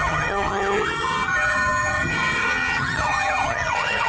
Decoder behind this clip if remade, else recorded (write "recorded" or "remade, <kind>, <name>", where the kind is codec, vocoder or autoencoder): remade, vocoder, HiFi-GAN